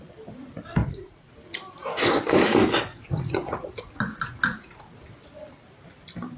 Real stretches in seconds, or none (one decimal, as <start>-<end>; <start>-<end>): 0.0-0.8; 1.3-2.9; 4.9-6.4

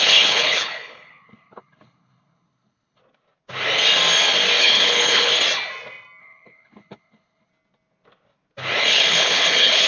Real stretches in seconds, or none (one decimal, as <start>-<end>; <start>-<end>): 3.0-4.6; 5.3-6.2; 7.5-8.8